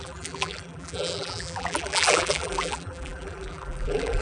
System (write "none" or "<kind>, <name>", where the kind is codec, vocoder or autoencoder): vocoder, BigVGAN v2